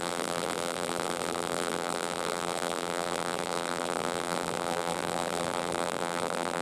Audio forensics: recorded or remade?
remade